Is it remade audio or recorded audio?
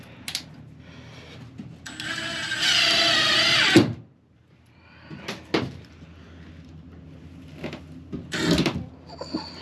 recorded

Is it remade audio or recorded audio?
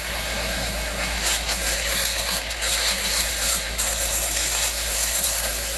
remade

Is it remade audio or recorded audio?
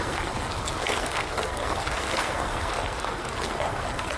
remade